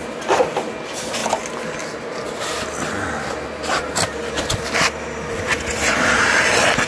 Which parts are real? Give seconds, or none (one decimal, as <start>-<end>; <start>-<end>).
1.2-5.3